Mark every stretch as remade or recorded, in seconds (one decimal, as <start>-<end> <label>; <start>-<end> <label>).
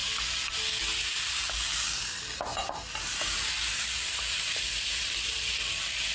0.0-2.5 recorded; 2.5-5.6 remade; 5.6-6.1 recorded